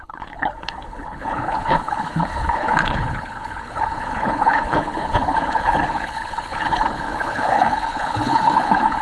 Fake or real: fake